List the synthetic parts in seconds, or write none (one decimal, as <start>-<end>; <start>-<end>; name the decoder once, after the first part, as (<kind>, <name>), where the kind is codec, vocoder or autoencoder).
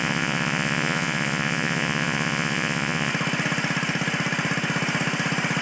0.0-3.1 (vocoder, Vocos)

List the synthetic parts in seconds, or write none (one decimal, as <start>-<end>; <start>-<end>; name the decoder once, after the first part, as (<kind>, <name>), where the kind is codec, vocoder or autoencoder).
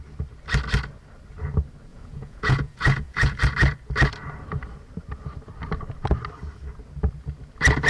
1.9-3.4 (vocoder, Vocos)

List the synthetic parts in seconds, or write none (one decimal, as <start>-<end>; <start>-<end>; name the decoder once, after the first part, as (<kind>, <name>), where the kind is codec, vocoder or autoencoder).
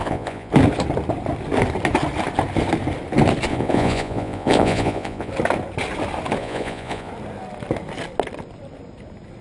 0.0-0.5 (vocoder, Vocos); 3.5-5.3; 6.4-7.1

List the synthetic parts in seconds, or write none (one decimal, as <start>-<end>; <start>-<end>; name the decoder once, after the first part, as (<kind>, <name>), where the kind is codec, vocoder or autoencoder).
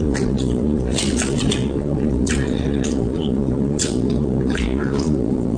0.0-5.6 (vocoder, Vocos)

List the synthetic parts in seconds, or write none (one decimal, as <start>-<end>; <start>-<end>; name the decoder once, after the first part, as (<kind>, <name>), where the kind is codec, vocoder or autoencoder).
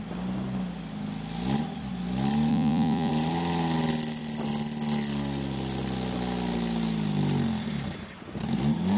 2.5-3.1 (vocoder, Vocos)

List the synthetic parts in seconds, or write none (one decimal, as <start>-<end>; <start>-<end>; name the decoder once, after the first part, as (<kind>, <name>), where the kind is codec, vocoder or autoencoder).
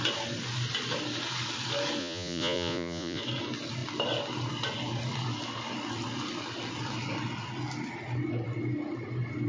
2.0-3.2 (vocoder, Vocos)